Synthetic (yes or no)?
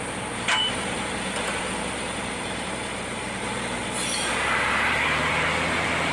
yes